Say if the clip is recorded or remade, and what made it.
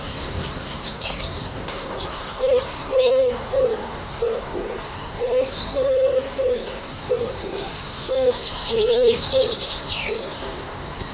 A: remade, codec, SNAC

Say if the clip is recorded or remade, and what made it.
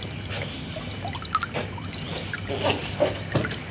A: recorded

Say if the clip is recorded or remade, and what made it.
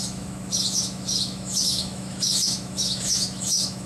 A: remade, autoencoder, DAC-VAE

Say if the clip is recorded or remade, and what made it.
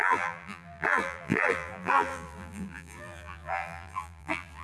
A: remade, vocoder, BigVGAN v2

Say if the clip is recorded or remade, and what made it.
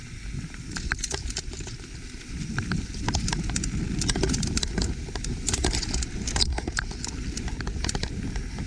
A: recorded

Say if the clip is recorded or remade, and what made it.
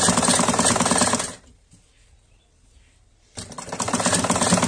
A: recorded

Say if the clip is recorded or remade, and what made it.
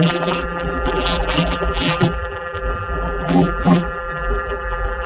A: remade, vocoder, BigVGAN v2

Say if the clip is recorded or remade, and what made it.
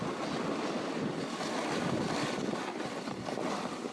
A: recorded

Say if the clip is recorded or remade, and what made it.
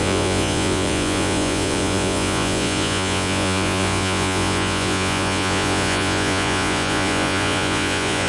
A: remade, vocoder, Vocos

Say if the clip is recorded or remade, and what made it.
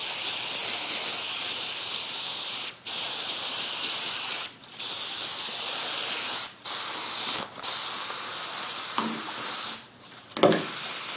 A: recorded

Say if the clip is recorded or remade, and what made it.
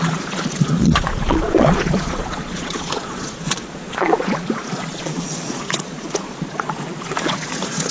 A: remade, vocoder, Vocos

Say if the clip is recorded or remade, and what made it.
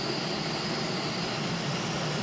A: recorded